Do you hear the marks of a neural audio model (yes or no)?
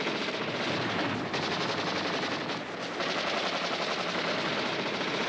no